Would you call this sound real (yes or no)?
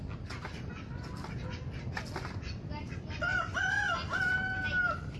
yes